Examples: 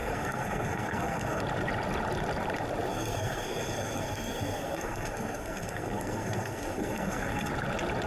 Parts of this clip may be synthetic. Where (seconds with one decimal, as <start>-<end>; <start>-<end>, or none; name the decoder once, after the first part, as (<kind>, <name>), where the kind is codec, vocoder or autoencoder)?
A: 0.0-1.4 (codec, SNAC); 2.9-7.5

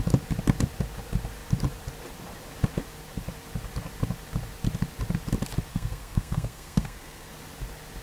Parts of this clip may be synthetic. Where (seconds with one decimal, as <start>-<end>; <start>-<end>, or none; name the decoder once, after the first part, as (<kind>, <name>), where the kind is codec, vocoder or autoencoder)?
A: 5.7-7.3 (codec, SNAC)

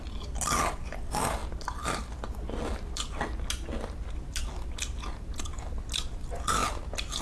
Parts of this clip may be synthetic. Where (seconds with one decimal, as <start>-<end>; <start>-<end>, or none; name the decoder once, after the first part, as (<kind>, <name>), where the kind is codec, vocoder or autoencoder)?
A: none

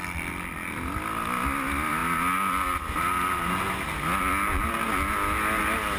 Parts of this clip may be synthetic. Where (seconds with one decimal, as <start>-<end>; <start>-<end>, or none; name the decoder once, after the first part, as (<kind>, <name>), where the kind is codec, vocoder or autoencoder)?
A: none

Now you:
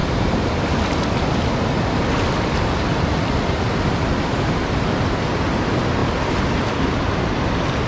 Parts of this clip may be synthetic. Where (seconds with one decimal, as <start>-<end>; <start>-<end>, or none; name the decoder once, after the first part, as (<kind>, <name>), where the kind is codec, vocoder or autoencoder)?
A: none